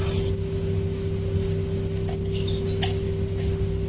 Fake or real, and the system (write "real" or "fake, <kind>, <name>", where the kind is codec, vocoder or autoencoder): real